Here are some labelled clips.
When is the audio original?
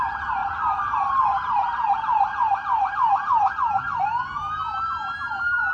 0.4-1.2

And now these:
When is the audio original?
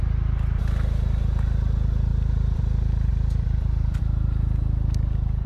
0.0-2.1; 2.6-3.1; 4.0-5.5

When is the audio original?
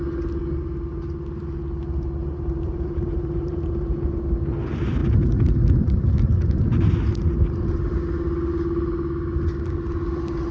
0.0-2.2; 4.0-10.5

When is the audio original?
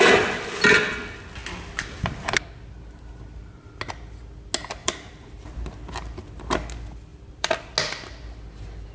0.0-4.8; 5.5-7.1; 7.6-8.9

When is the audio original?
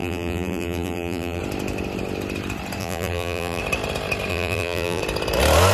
1.4-2.8; 3.6-4.3; 5.0-5.7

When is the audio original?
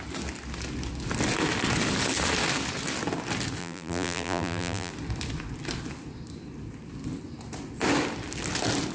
0.0-3.6; 4.9-8.9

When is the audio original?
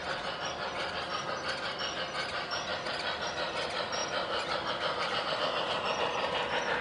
0.0-3.3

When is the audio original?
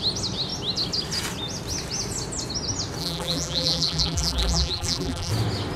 0.0-3.0; 5.3-5.8